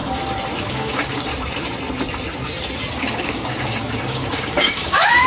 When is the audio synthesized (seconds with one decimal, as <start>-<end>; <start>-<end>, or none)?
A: 0.6-1.3; 2.9-5.3